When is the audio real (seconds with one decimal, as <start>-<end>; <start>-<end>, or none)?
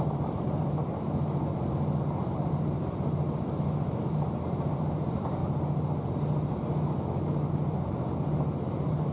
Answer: 0.9-2.0; 5.4-7.5